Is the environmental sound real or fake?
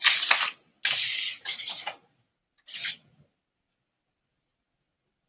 real